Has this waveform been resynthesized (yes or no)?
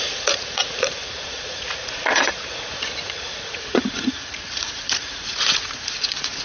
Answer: yes